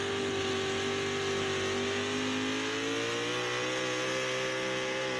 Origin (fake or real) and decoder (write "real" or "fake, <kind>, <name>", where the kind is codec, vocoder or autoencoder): real